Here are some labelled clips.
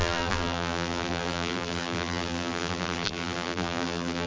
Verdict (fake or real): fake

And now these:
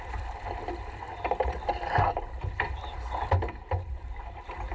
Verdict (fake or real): fake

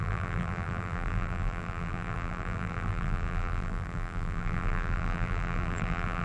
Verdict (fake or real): fake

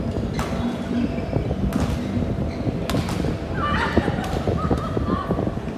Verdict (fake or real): real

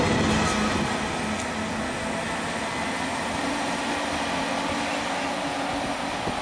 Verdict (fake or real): real